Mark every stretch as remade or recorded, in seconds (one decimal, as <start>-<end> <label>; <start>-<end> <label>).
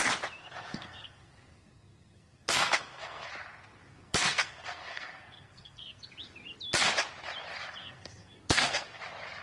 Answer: 0.0-0.4 recorded; 0.4-3.3 remade; 3.3-3.9 recorded; 3.9-6.0 remade; 6.0-7.8 recorded; 7.8-9.0 remade; 9.0-9.4 recorded